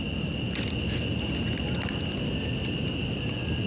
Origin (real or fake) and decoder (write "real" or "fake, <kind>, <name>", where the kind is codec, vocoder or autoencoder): real